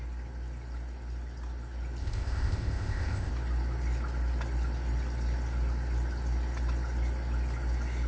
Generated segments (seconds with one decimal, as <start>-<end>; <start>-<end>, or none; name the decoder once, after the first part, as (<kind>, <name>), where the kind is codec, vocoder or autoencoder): 2.0-3.3 (codec, ZipCodec)